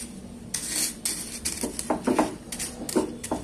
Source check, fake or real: real